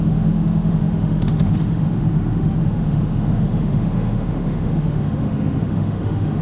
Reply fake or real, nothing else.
fake